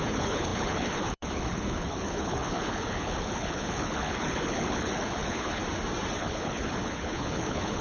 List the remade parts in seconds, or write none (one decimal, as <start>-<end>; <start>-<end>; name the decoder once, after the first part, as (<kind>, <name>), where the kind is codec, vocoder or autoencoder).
0.0-5.6 (codec, HILCodec); 6.2-7.8